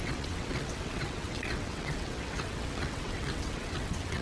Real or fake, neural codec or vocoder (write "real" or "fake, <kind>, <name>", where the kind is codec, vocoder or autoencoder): fake, vocoder, WaveNeXt